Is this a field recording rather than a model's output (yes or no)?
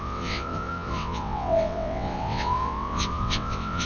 no